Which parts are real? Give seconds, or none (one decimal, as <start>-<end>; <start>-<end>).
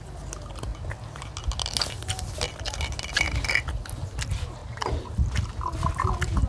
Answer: 0.0-6.5